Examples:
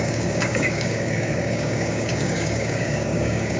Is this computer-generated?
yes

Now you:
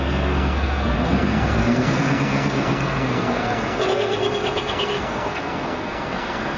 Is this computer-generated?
yes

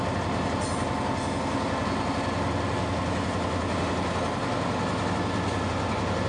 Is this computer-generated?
no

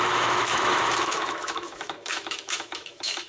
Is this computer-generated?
yes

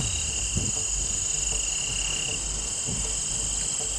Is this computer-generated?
no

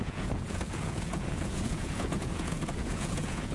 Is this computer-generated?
yes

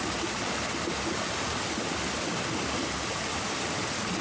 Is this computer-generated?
no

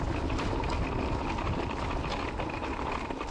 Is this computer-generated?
no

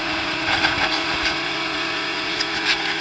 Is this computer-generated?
yes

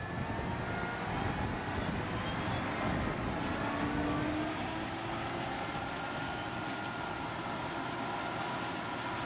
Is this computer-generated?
no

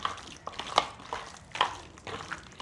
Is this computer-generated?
no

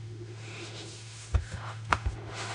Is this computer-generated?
yes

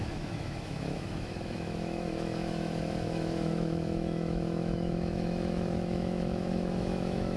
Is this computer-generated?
yes